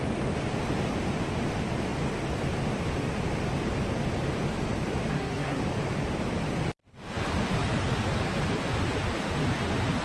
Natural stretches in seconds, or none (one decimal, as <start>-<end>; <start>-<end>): 0.0-5.1; 5.6-10.0